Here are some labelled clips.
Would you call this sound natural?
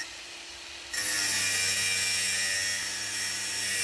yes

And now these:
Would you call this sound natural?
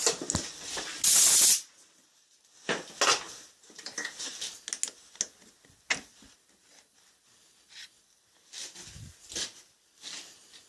yes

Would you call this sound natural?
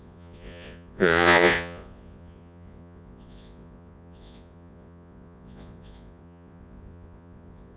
no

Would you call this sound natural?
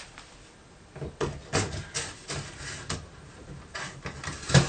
yes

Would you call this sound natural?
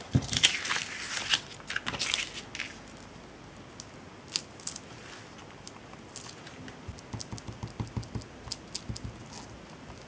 yes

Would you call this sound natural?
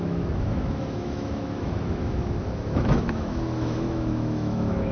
no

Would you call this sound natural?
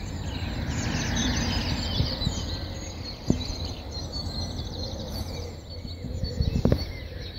yes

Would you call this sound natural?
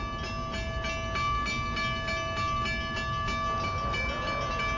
yes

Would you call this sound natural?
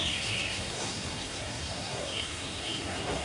no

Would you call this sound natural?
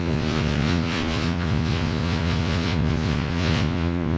no